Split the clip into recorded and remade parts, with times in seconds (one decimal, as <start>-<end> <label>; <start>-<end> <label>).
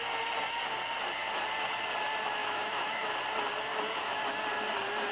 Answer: 0.0-2.4 recorded; 2.4-3.1 remade; 3.1-3.7 recorded; 3.7-4.2 remade; 4.2-5.1 recorded